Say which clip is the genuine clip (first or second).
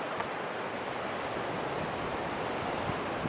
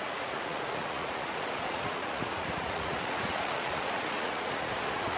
first